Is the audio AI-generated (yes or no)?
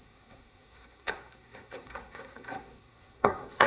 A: yes